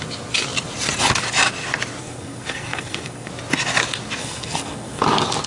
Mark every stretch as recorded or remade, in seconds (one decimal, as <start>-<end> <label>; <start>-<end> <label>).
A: 0.0-2.0 recorded; 2.0-3.3 remade; 3.3-4.2 recorded; 4.2-5.0 remade; 5.0-5.5 recorded